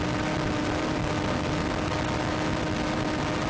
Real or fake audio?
real